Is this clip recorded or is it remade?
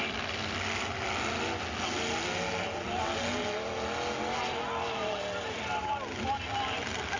recorded